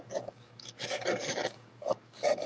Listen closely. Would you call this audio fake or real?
fake